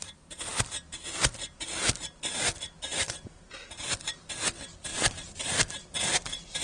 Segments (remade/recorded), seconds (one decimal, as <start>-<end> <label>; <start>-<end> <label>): 0.0-6.6 recorded